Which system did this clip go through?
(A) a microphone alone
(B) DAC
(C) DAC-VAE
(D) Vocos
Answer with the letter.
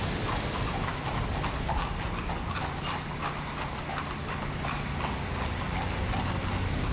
A